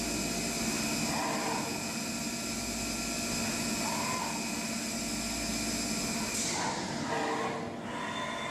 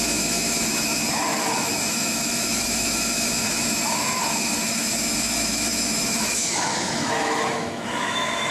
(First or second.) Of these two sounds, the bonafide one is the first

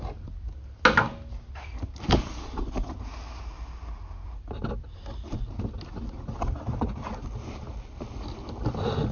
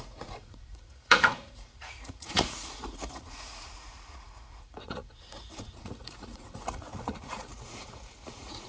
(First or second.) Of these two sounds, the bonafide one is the first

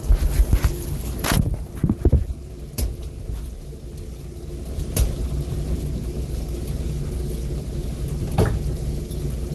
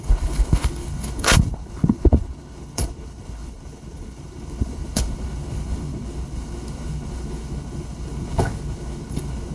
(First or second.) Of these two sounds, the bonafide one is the first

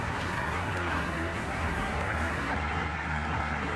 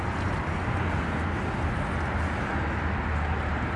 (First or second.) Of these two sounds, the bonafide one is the second